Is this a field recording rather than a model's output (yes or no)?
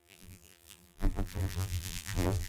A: no